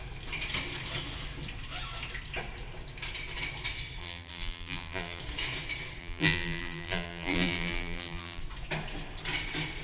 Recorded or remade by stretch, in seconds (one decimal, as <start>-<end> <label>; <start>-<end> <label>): 0.0-4.0 recorded; 4.0-5.2 remade; 5.2-6.0 recorded; 6.0-8.4 remade; 8.4-9.8 recorded